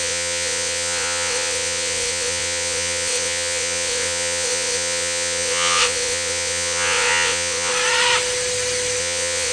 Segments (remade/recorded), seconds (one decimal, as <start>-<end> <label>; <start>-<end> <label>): 0.0-7.7 remade; 7.7-9.0 recorded; 9.0-9.5 remade